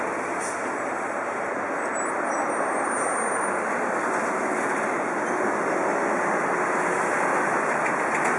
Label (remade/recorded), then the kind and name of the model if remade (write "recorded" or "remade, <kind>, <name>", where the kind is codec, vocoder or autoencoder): recorded